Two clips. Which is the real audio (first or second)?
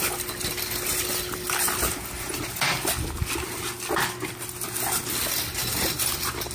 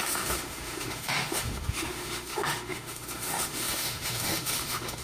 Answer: first